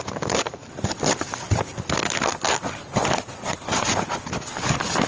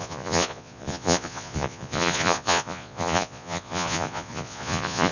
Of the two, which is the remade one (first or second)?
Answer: second